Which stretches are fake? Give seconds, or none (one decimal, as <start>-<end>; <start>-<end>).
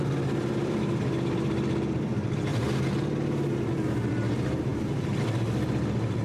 0.0-2.5; 3.7-6.2